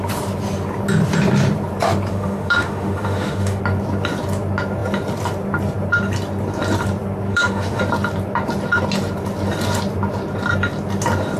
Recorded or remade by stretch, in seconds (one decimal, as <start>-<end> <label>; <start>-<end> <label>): 0.0-2.1 recorded; 2.1-3.6 remade; 3.6-7.3 recorded; 7.3-7.8 remade; 7.8-11.4 recorded